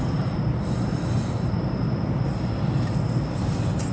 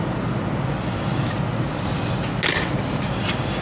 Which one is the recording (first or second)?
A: second